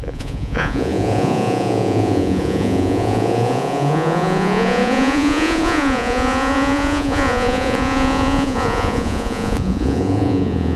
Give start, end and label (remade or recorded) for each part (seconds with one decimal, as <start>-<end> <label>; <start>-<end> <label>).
0.0-10.8 remade